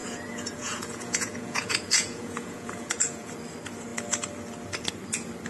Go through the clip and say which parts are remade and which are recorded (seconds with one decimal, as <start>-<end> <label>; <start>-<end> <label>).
0.0-3.3 remade; 3.3-5.5 recorded